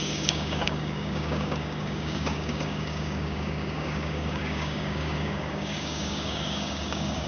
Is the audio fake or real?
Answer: fake